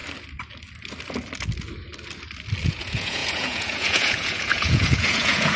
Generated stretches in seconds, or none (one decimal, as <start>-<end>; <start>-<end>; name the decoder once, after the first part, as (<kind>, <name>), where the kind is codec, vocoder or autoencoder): 2.7-5.6 (vocoder, Vocos)